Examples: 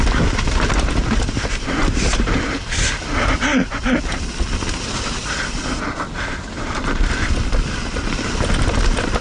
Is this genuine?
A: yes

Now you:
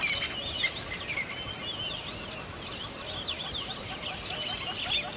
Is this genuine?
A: yes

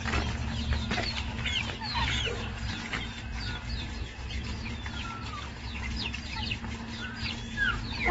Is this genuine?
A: yes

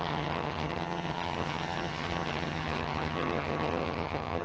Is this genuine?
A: no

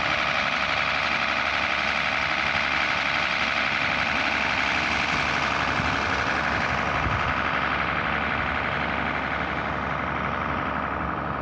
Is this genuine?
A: yes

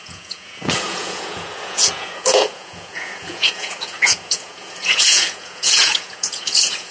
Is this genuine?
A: no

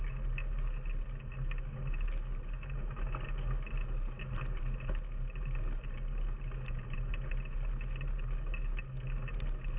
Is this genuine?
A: yes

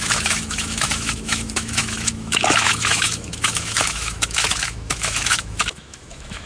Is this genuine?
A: no